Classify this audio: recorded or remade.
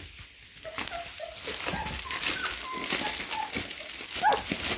recorded